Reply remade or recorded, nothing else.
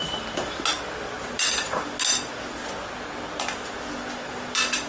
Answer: recorded